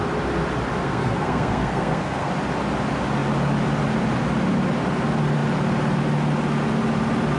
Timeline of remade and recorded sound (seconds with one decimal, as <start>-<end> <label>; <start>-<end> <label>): 0.0-0.8 recorded; 0.8-2.3 remade; 2.3-7.4 recorded

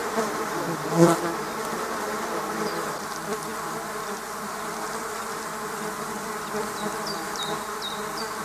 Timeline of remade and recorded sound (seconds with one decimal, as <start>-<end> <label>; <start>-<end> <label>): 0.0-0.5 remade; 0.5-8.4 recorded